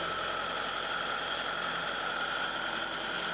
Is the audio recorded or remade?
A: recorded